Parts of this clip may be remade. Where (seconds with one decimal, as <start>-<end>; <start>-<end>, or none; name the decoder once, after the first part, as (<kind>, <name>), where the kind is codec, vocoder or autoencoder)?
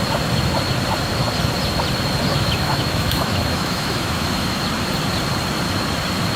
2.3-4.6 (autoencoder, DAC-VAE)